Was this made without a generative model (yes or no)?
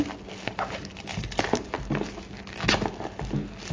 yes